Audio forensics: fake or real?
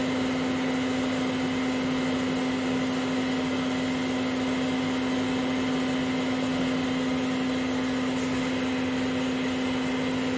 real